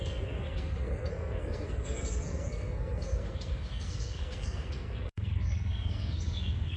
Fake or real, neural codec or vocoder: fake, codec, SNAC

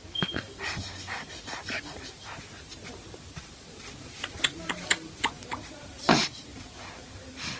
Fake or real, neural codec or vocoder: real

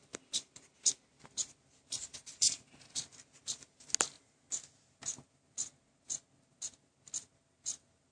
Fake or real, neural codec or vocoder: real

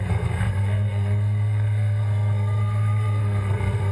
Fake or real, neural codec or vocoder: fake, codec, SNAC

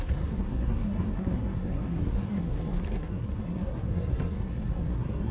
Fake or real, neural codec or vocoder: fake, codec, SNAC